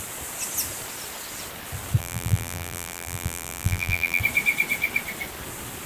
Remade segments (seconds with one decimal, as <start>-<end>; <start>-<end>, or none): 2.0-4.2